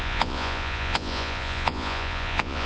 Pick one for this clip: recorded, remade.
remade